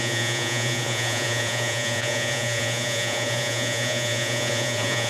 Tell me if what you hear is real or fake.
fake